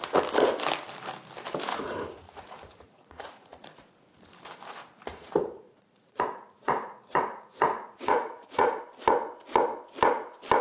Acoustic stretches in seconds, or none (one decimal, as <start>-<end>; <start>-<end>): 0.0-1.7; 3.8-5.1; 8.8-10.6